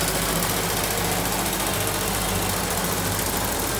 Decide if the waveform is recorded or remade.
recorded